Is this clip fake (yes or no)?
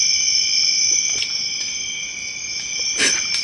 no